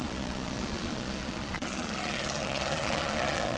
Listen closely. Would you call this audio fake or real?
fake